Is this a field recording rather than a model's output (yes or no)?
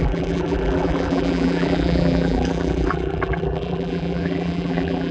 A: no